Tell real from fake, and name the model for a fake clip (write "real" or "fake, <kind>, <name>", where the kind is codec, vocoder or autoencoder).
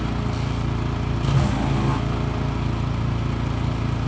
real